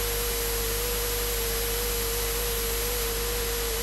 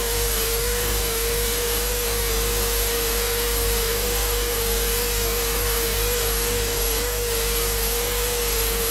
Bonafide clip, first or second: first